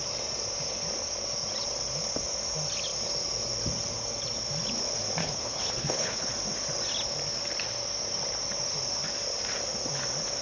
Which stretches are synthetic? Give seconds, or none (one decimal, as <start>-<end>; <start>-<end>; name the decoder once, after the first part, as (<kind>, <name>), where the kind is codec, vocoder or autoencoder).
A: 5.2-6.3 (codec, HILCodec)